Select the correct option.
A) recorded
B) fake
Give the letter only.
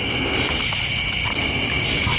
A